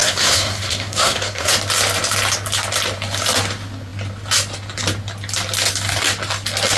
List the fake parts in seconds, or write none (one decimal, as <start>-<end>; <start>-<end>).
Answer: 0.0-1.5